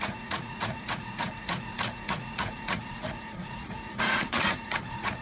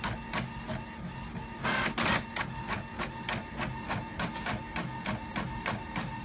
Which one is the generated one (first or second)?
first